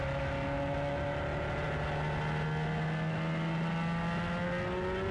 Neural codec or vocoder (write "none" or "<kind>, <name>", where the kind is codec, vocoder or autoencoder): none